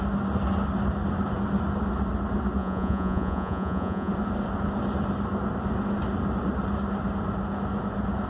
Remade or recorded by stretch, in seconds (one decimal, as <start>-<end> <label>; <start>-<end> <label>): 0.0-2.6 recorded; 2.6-4.1 remade; 4.1-8.3 recorded